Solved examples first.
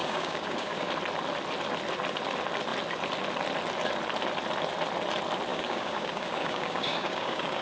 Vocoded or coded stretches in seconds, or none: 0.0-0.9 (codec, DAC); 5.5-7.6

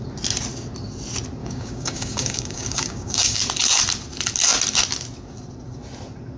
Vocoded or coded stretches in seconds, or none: 1.4-3.4 (codec, DAC)

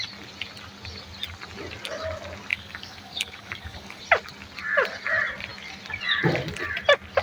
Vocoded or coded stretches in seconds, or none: 2.5-4.0 (codec, DAC)

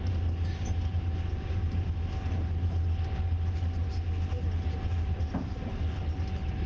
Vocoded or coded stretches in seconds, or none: none

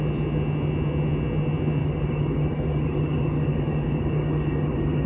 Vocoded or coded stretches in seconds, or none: 1.8-5.1 (codec, DAC)

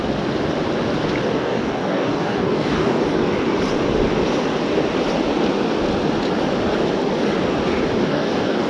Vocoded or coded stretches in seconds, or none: 1.3-3.0 (codec, DAC); 8.1-8.7